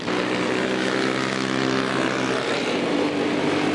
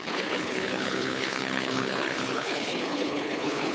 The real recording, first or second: first